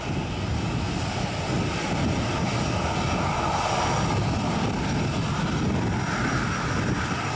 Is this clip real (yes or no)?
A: yes